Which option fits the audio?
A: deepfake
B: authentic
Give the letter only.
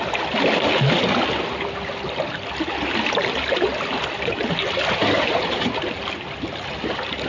B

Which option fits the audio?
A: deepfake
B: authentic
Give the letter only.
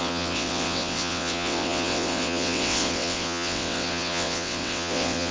A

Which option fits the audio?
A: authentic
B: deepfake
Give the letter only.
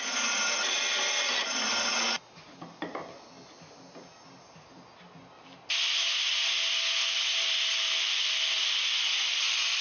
A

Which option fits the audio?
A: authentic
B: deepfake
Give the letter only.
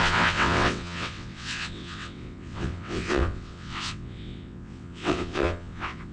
B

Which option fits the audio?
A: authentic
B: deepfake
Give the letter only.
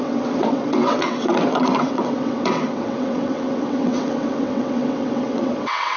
B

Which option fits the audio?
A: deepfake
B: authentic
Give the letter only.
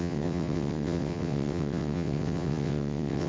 A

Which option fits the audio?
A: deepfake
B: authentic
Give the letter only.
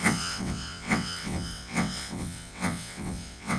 A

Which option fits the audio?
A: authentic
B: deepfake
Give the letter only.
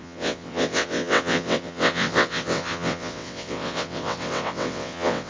B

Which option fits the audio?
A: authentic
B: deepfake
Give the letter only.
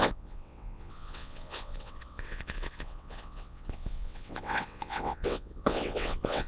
B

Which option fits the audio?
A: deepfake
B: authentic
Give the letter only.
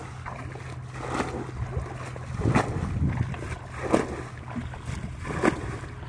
B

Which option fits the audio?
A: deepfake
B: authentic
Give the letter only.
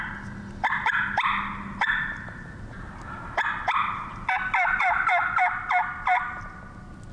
B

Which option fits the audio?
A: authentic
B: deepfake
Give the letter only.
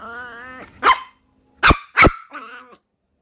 A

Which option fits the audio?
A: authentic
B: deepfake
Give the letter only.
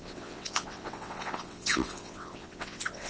B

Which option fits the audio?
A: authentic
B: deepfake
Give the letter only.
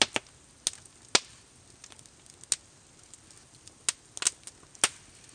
A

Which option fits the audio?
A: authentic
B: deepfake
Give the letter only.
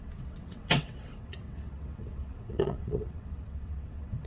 B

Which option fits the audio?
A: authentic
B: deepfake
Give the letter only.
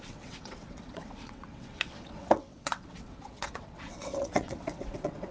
B